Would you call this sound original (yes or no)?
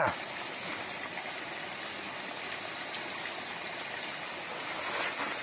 yes